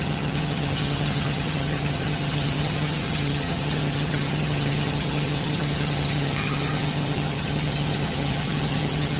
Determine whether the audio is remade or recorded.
remade